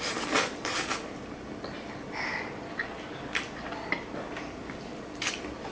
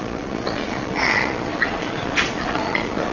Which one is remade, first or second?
second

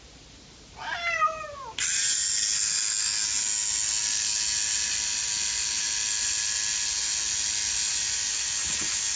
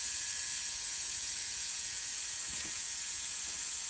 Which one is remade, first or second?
second